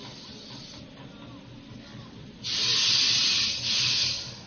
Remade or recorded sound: recorded